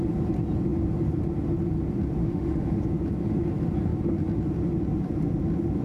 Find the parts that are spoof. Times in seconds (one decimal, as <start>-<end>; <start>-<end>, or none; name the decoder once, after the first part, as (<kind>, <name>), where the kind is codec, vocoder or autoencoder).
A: 2.2-2.8 (autoencoder, DAC-VAE)